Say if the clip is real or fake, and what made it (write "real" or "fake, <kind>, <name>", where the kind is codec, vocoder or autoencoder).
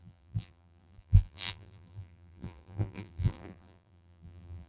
fake, vocoder, BigVGAN v2